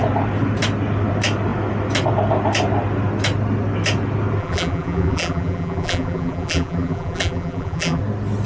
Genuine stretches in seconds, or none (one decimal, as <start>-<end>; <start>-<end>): 0.0-4.4; 8.0-8.5